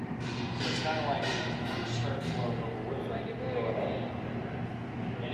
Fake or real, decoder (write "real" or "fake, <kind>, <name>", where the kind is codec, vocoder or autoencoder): real